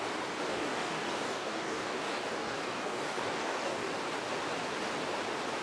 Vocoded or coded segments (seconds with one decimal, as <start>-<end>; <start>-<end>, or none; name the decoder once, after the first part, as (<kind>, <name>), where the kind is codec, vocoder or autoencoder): 0.5-3.9 (codec, DAC)